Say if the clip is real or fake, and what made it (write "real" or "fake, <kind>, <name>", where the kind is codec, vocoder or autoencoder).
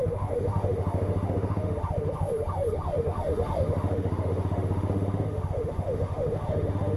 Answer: fake, autoencoder, DAC-VAE